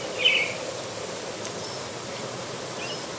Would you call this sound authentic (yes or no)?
yes